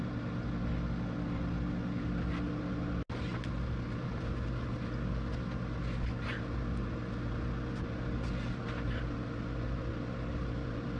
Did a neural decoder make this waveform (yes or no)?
no